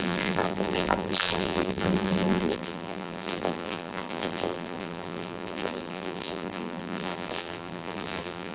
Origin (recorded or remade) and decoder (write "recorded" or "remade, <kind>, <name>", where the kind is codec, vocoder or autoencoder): remade, vocoder, BigVGAN v2